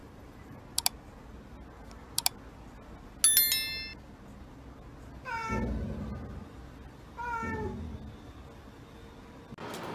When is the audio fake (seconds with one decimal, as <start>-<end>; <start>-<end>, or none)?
0.0-0.6